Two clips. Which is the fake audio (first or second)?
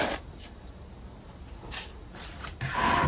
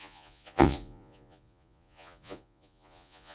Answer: second